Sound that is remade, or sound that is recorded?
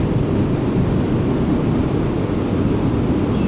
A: recorded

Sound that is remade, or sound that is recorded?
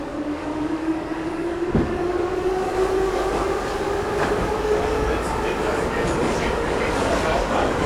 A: remade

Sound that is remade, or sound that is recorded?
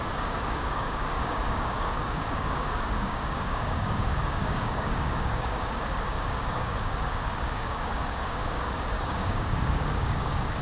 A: remade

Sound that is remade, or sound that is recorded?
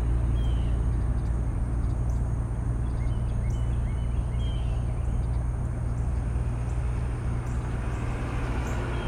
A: recorded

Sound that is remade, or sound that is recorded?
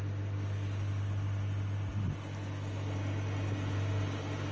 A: recorded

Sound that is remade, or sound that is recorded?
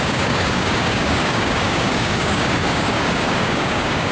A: remade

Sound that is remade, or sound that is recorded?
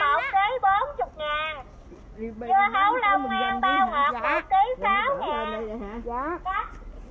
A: recorded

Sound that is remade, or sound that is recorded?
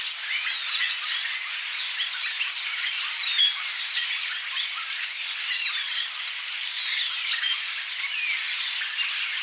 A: recorded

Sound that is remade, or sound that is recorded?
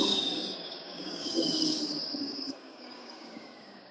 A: remade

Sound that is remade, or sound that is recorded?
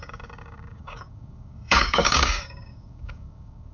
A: remade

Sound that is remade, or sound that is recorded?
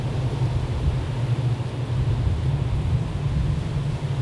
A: recorded